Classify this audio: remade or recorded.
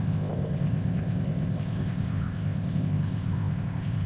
remade